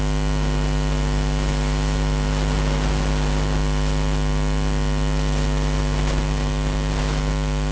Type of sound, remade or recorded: recorded